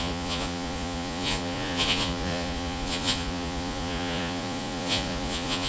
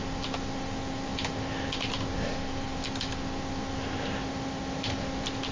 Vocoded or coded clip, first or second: first